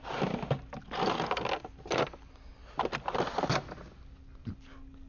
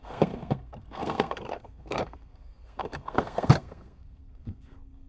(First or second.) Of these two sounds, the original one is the first